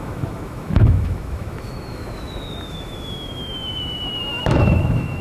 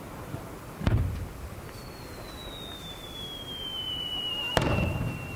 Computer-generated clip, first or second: first